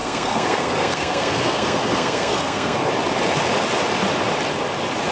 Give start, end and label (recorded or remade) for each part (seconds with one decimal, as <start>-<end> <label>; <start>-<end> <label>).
0.0-2.9 remade; 2.9-5.1 recorded